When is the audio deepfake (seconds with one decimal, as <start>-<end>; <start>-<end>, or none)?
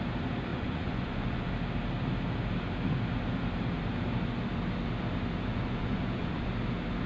0.5-1.5; 5.5-6.5